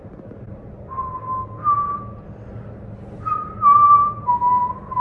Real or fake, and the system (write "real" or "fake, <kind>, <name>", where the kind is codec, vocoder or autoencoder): real